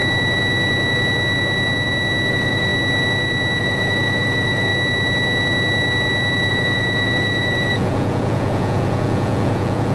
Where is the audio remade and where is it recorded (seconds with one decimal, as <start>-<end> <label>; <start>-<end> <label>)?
0.0-2.3 recorded; 2.3-2.7 remade; 2.7-3.6 recorded; 3.6-4.7 remade; 4.7-6.5 recorded; 6.5-9.9 remade

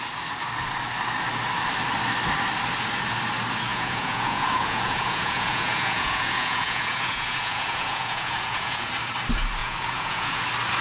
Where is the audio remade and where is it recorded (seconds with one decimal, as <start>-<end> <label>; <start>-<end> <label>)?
0.0-3.7 recorded; 3.7-8.9 remade; 8.9-9.6 recorded; 9.6-10.4 remade; 10.4-10.8 recorded